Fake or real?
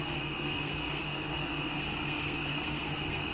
fake